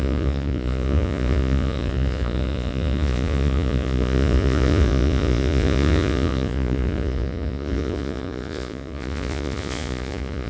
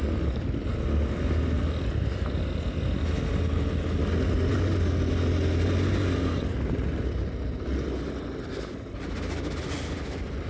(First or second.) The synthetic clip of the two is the first